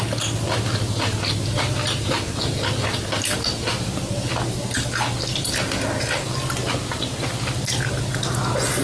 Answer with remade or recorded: recorded